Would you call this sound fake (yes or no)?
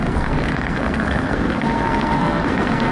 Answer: yes